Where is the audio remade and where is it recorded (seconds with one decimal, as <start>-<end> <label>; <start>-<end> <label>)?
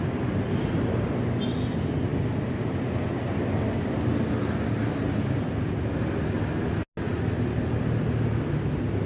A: 0.0-9.1 recorded